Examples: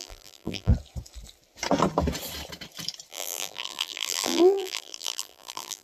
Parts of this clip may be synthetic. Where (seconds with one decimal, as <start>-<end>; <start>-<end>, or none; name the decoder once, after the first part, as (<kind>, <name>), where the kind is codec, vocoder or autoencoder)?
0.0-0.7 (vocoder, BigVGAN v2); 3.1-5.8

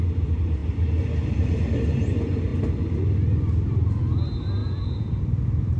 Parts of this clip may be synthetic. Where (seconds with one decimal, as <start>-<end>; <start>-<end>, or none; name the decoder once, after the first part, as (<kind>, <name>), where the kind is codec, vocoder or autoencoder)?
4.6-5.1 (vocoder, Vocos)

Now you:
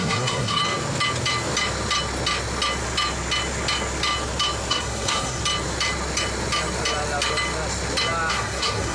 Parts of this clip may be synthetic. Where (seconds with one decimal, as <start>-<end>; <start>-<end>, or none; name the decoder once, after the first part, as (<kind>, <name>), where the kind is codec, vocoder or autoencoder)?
0.0-0.6 (codec, SNAC); 4.7-5.4; 8.3-8.9

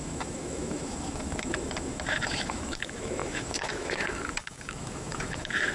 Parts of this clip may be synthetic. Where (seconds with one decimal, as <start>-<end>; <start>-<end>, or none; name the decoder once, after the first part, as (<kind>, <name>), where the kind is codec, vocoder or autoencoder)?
0.0-5.7 (autoencoder, DAC-VAE)

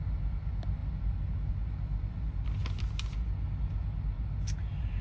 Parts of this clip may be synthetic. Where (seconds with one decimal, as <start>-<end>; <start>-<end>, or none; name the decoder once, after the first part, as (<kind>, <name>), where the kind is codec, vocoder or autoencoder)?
none

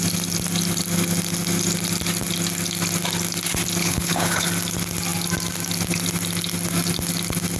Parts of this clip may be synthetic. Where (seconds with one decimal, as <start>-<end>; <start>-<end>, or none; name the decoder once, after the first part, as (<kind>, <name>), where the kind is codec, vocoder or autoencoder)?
3.8-4.5 (codec, HILCodec)

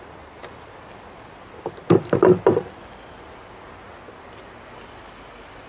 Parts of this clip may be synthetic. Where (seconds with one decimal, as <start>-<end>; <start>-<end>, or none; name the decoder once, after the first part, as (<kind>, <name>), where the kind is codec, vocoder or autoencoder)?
none